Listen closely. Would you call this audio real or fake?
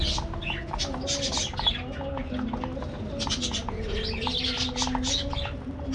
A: real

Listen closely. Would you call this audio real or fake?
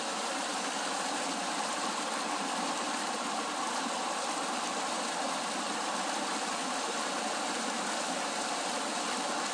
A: real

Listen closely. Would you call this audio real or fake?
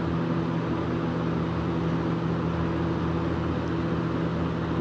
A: real